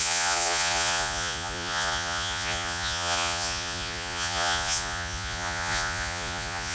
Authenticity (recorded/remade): remade